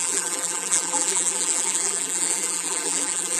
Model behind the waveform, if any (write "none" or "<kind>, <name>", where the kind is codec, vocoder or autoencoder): vocoder, BigVGAN v2